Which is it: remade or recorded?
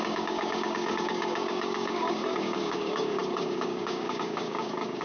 remade